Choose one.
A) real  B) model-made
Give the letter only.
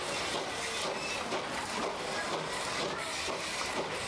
A